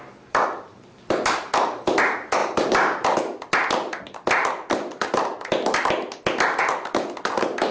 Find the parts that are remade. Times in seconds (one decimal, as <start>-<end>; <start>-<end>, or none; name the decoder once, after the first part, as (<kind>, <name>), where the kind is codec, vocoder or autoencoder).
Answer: none